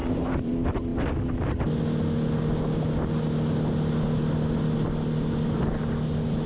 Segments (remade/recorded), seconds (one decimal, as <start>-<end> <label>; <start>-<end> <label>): 0.0-0.5 remade; 0.5-6.5 recorded